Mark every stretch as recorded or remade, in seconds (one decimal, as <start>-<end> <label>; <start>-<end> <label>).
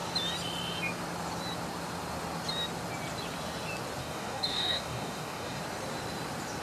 0.0-4.0 recorded; 4.0-5.6 remade; 5.6-6.6 recorded